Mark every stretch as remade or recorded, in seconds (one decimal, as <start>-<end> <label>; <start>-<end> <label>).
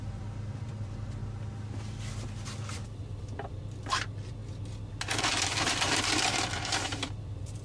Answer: 0.0-1.2 remade; 1.2-2.7 recorded; 2.7-4.4 remade; 4.4-5.2 recorded; 5.2-7.6 remade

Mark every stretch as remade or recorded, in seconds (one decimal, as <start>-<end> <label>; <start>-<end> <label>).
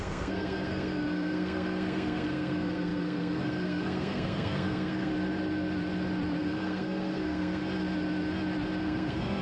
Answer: 0.0-5.1 remade; 5.1-6.4 recorded; 6.4-7.6 remade; 7.6-8.8 recorded; 8.8-9.4 remade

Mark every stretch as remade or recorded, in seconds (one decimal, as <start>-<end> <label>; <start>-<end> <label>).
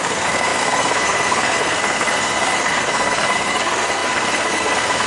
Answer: 0.0-5.1 remade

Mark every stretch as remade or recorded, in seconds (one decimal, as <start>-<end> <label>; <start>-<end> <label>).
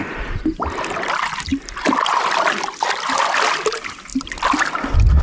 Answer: 0.0-5.2 recorded